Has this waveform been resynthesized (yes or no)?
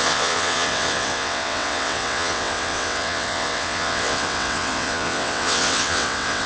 yes